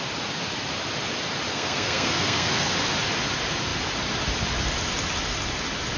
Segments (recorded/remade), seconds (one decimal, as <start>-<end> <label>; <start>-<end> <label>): 0.0-1.5 recorded; 1.5-2.7 remade; 2.7-6.0 recorded